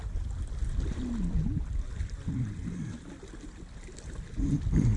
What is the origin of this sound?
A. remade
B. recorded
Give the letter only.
B